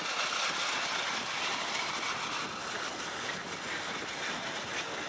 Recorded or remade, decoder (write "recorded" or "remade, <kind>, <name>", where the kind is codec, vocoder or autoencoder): recorded